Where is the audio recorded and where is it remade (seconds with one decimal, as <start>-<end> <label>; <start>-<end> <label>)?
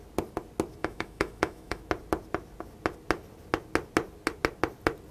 0.0-0.8 recorded; 0.8-1.8 remade; 1.8-5.1 recorded